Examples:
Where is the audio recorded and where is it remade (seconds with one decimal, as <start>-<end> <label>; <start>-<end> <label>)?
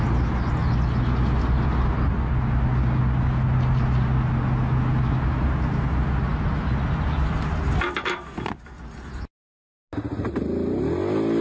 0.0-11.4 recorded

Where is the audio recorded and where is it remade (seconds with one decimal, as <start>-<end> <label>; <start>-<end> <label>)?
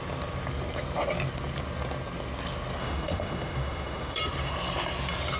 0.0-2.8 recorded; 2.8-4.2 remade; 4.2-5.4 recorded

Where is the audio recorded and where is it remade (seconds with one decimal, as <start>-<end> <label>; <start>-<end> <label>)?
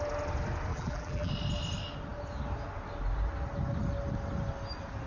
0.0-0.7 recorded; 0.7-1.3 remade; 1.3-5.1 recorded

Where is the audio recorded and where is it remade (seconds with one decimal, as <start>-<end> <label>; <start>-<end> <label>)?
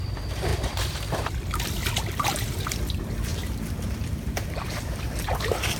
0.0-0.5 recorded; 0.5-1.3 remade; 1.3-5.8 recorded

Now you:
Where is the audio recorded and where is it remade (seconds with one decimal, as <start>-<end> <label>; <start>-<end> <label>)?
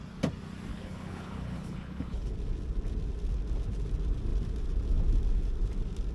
0.0-0.7 recorded; 0.7-2.3 remade; 2.3-6.1 recorded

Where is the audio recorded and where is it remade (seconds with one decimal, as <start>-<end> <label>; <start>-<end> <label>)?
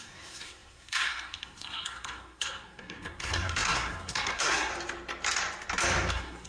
0.0-4.7 remade; 4.7-6.1 recorded; 6.1-6.5 remade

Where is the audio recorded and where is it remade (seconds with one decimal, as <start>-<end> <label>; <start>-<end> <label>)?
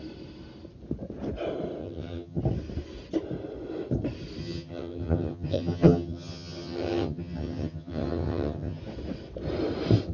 0.0-1.8 recorded; 1.8-2.4 remade; 2.4-4.4 recorded; 4.4-8.8 remade; 8.8-10.1 recorded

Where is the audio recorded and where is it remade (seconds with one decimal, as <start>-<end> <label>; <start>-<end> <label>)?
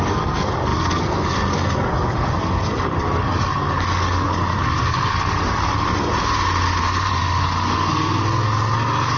0.0-6.1 remade; 6.1-6.8 recorded; 6.8-9.2 remade